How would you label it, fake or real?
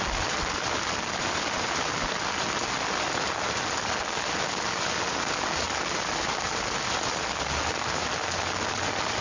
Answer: real